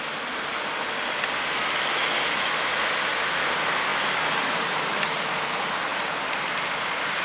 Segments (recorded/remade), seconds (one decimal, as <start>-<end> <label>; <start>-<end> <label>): 0.0-7.2 recorded